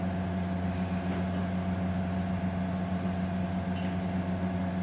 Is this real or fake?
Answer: real